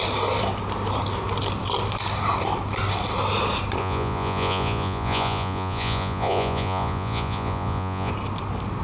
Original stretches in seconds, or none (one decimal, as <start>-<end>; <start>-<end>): 0.0-3.8; 8.1-8.8